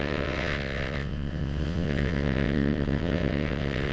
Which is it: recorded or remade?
remade